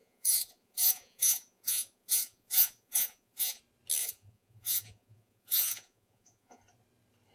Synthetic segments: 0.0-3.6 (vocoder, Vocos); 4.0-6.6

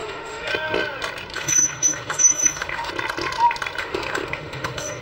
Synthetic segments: 0.0-0.5 (autoencoder, DAC-VAE); 1.3-2.9; 3.8-5.0

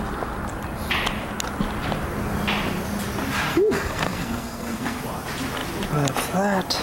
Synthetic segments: 3.5-5.0 (codec, SNAC)

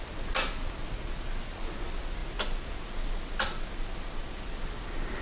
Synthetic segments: none

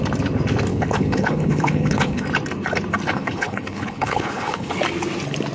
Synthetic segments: 0.7-2.2 (codec, HILCodec); 3.1-4.7

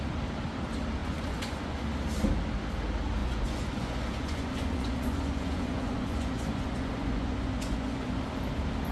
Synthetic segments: 1.0-1.8 (vocoder, Vocos); 3.2-8.2

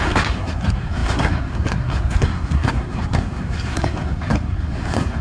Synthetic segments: 0.0-5.2 (codec, SNAC)